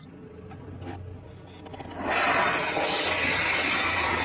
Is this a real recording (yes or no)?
yes